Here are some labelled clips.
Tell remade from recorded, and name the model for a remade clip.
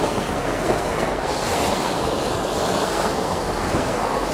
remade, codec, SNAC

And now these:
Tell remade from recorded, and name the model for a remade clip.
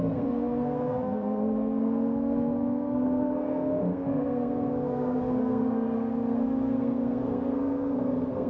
remade, codec, SNAC